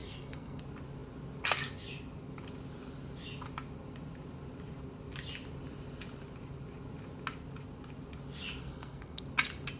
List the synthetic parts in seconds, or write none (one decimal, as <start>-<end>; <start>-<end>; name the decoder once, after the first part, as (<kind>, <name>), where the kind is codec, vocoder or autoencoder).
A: 0.0-0.6 (codec, SNAC); 8.6-9.2